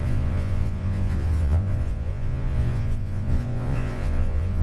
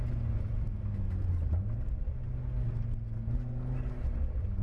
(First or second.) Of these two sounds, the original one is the second